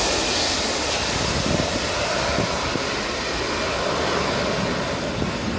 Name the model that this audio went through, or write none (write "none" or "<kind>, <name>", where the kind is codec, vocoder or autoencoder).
none